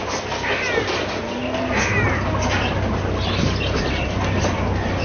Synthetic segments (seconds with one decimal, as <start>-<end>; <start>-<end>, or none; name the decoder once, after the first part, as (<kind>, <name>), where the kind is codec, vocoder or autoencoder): none